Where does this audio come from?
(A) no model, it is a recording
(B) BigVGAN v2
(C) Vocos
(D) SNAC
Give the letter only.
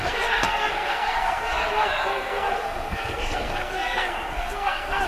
D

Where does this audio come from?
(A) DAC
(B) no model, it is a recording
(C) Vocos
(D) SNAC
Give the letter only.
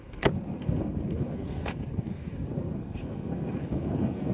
D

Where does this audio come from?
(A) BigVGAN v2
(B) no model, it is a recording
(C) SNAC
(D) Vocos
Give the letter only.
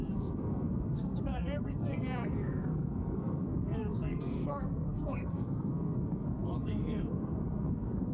C